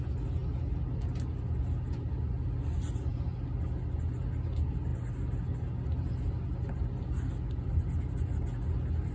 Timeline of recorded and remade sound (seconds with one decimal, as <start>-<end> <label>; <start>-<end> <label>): 0.0-9.1 recorded